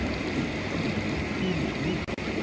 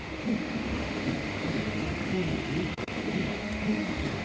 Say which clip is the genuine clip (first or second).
first